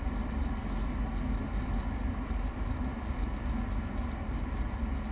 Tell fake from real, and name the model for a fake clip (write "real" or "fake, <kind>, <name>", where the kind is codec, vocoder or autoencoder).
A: fake, vocoder, BigVGAN v2